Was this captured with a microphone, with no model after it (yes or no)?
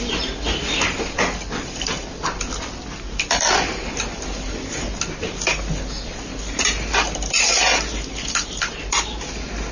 yes